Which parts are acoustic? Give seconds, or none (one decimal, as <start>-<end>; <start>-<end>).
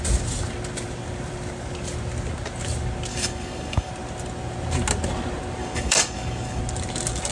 0.0-3.1; 3.9-5.6; 6.6-7.3